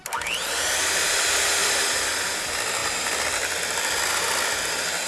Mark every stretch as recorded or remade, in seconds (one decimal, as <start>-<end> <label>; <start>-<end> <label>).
0.0-5.1 recorded